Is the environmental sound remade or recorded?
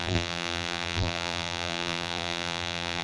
remade